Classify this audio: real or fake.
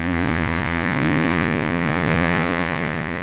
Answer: fake